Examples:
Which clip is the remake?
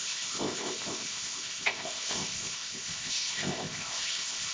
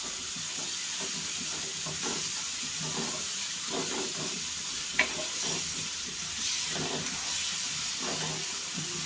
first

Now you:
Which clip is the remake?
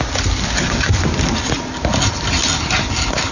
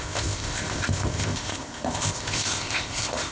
second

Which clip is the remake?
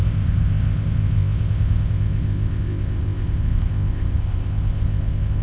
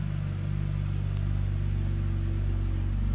first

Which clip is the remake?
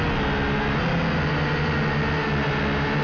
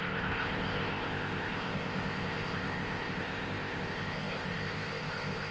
second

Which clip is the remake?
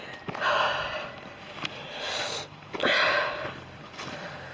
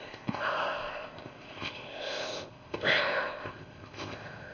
second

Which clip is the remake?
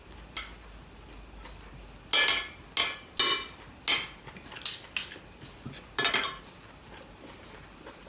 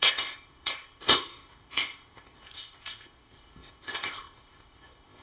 second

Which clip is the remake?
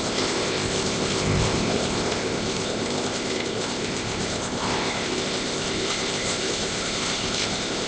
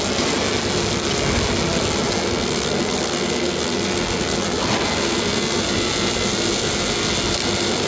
first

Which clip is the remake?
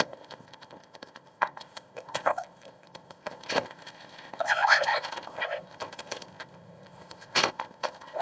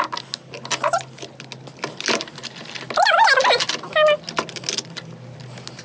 first